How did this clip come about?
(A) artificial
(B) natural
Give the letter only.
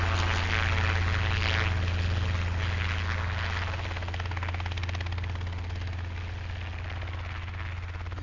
B